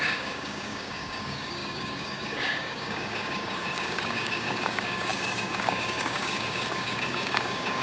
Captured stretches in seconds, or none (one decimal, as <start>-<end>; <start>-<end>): none